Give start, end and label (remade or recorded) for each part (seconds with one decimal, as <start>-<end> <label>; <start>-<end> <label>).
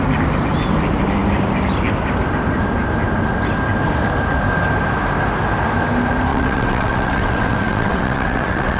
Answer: 0.0-6.3 recorded; 6.3-8.8 remade